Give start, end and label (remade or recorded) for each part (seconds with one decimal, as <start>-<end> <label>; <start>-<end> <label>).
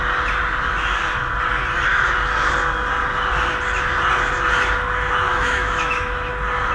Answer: 0.0-5.3 recorded; 5.3-6.3 remade; 6.3-6.7 recorded